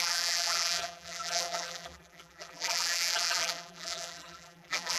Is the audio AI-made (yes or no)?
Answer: yes